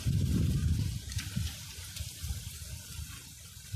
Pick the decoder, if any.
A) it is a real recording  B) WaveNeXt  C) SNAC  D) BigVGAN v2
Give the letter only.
A